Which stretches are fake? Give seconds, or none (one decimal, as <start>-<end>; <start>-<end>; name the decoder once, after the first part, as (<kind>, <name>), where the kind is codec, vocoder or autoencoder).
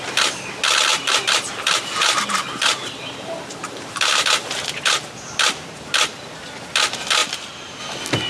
0.9-5.3 (vocoder, BigVGAN v2); 7.2-7.8